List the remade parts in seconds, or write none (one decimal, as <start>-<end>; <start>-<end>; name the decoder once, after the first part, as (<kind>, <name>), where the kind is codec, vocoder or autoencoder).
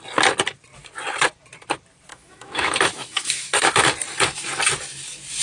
2.1-3.8 (autoencoder, DAC-VAE)